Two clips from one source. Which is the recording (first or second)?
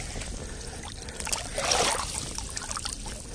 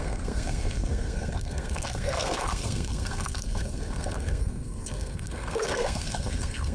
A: first